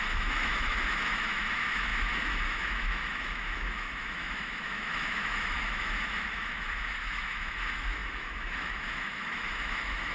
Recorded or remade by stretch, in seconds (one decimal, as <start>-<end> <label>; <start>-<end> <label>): 0.0-10.1 remade